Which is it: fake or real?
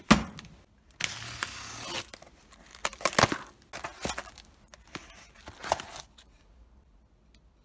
real